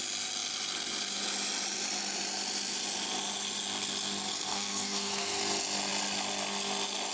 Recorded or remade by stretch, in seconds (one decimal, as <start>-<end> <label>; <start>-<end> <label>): 0.0-4.5 recorded; 4.5-5.4 remade; 5.4-7.1 recorded